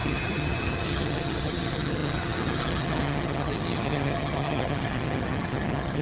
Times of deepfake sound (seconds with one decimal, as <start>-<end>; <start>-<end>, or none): 0.0-6.0